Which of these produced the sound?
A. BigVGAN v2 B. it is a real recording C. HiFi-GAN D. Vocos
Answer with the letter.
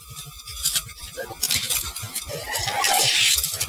B